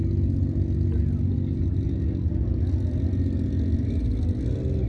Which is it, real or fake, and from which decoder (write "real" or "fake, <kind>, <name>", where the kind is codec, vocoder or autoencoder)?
real